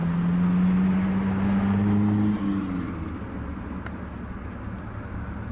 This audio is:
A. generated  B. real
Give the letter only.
B